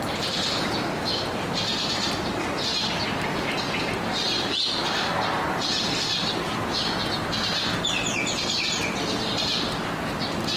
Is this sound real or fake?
real